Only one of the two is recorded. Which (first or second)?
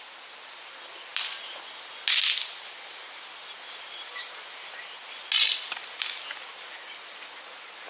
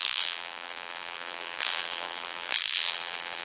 first